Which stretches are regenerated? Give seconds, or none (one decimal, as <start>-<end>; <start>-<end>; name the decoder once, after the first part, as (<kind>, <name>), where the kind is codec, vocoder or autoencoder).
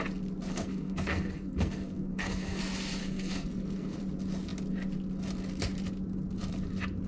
0.5-2.6 (codec, SNAC); 3.0-4.0